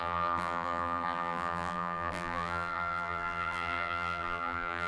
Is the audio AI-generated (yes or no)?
yes